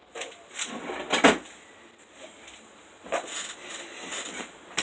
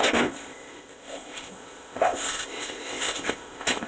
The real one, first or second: first